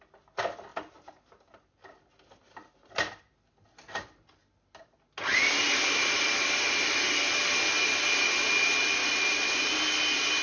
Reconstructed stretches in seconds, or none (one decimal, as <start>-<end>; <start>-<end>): 5.3-6.2; 9.0-9.6